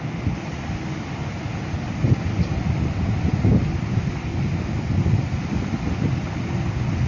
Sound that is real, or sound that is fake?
real